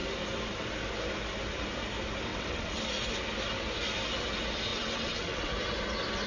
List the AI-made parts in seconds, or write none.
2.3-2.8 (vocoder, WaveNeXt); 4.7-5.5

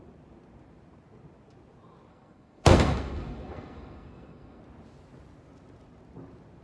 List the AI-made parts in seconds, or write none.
2.1-4.6 (codec, SNAC)

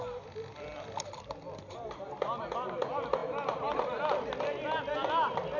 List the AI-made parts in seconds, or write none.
none

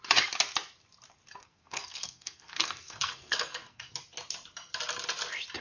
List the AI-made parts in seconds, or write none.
1.4-3.9 (codec, SNAC)

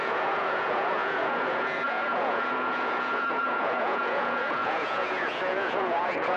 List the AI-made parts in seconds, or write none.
0.0-6.4 (vocoder, Vocos)

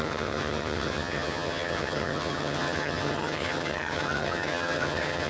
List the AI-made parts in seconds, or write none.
0.0-5.3 (vocoder, HiFi-GAN)